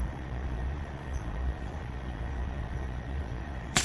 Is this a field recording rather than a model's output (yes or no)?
no